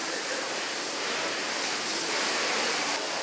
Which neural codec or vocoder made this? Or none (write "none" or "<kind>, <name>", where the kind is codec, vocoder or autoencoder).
none